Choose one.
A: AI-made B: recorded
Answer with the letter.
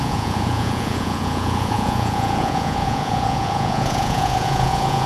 A